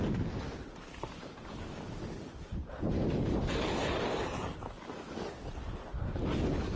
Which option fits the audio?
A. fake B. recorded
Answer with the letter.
B